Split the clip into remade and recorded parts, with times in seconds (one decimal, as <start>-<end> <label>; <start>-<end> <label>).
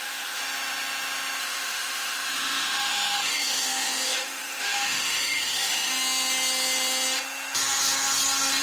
0.0-0.4 remade; 0.4-1.4 recorded; 1.4-5.9 remade; 5.9-8.6 recorded